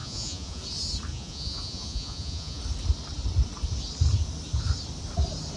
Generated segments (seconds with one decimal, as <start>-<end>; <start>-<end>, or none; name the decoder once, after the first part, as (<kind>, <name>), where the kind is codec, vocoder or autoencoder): 0.0-0.6 (vocoder, Vocos); 1.1-2.6